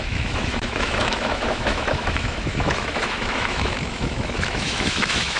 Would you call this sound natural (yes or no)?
no